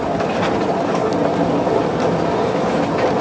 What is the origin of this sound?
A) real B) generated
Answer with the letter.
A